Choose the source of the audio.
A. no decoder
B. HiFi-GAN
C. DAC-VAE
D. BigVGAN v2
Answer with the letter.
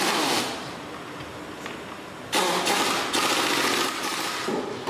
A